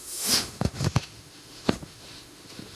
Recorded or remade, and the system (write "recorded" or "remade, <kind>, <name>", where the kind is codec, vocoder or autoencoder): remade, autoencoder, DAC-VAE